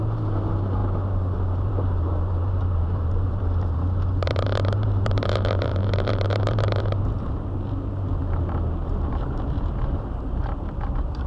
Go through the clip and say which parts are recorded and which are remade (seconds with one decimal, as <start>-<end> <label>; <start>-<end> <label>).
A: 0.0-11.3 remade